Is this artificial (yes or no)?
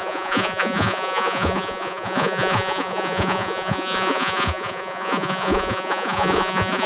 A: yes